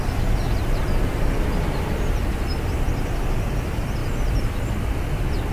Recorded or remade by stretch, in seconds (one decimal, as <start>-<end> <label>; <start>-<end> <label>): 0.0-5.5 recorded